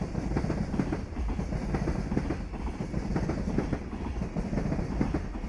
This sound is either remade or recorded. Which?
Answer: recorded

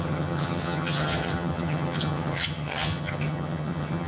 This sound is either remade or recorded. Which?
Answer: remade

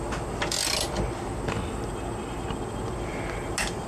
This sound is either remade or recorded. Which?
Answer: recorded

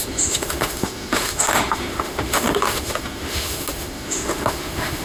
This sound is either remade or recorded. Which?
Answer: remade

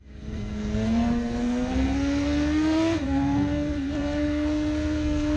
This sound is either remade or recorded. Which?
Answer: remade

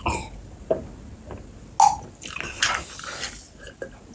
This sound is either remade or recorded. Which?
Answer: recorded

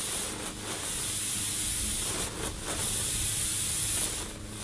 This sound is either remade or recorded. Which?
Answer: recorded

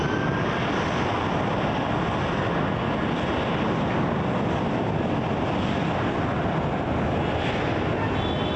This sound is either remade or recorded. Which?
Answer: recorded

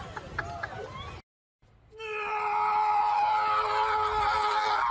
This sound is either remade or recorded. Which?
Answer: recorded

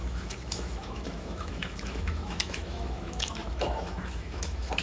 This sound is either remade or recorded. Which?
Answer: remade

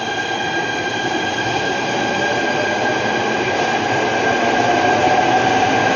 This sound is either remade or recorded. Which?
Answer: recorded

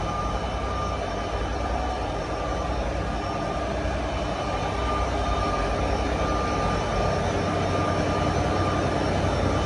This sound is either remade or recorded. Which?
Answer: recorded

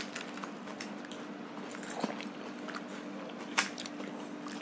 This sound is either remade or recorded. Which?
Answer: recorded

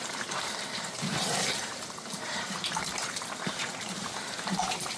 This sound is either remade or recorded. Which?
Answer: remade